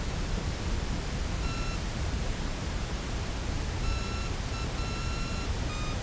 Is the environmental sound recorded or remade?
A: recorded